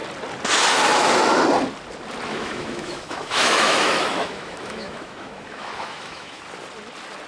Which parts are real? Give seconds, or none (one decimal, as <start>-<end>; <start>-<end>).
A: 0.0-2.3; 6.4-7.3